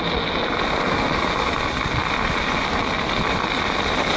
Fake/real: real